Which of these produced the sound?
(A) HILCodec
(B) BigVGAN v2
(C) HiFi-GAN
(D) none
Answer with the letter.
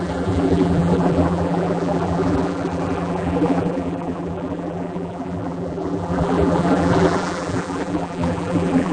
B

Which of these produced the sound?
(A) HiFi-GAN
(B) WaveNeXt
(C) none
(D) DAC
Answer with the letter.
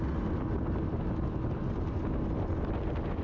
C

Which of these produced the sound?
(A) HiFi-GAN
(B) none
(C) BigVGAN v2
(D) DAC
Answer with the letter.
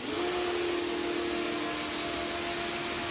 B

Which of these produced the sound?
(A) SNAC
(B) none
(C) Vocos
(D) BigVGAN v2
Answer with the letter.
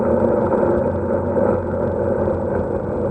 B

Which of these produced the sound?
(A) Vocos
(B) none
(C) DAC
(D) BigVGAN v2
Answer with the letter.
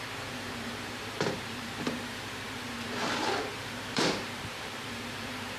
D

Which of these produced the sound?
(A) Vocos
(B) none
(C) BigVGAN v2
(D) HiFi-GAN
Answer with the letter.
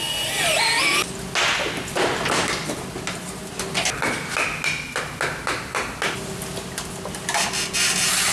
B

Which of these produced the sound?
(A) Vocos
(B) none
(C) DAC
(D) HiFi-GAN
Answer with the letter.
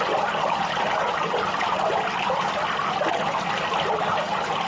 B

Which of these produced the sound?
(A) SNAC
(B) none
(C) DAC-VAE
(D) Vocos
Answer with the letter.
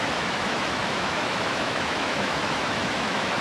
C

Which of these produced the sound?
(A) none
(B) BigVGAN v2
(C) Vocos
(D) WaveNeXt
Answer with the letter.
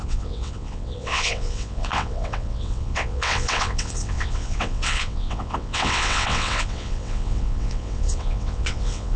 D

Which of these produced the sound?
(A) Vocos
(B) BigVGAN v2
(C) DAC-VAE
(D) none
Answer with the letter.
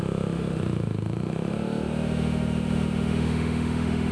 C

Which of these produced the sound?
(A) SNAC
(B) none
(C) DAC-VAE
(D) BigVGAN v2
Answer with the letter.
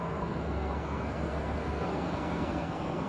A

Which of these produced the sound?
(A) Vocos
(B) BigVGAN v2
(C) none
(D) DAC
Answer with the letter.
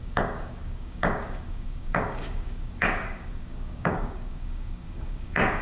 D